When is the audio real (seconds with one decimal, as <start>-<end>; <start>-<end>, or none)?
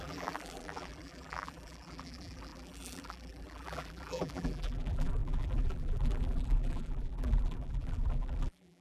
none